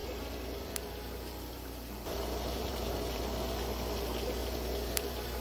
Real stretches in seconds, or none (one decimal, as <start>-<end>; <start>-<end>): 3.2-4.4